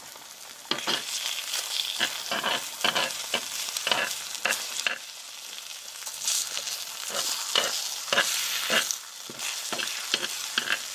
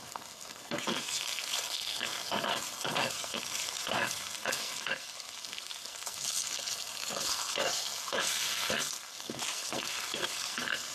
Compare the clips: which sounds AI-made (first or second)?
second